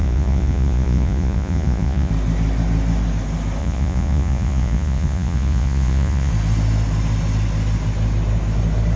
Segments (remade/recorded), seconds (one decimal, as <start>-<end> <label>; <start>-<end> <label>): 0.0-2.1 remade; 2.1-3.6 recorded; 3.6-6.3 remade; 6.3-9.0 recorded